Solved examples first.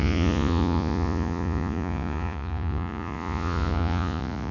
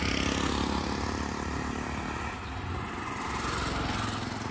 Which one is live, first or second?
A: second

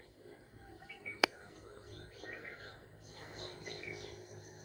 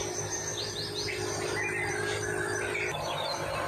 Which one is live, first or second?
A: second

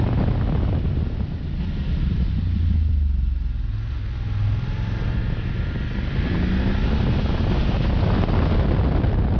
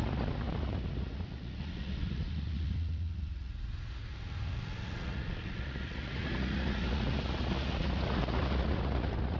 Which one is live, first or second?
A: first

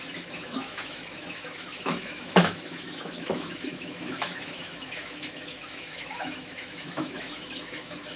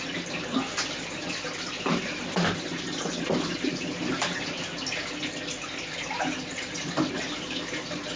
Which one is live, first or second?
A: second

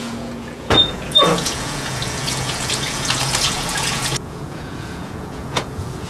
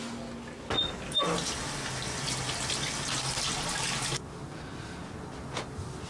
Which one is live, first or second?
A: second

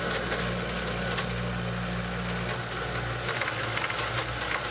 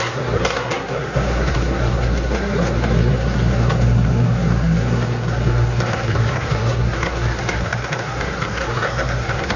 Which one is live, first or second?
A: first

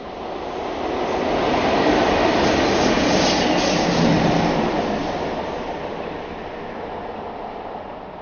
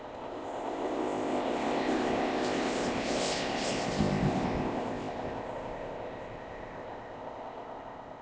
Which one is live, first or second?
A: first